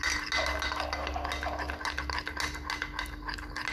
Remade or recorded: recorded